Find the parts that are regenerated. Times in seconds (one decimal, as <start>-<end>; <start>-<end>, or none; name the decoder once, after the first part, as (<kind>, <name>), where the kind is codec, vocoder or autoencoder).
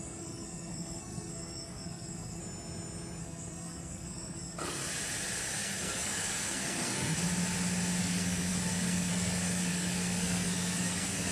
0.0-2.4 (codec, SNAC); 3.2-4.8; 5.5-7.2; 8.0-11.3